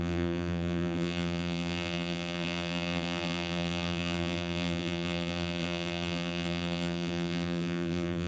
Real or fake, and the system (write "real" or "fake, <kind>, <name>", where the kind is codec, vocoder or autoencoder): fake, vocoder, BigVGAN v2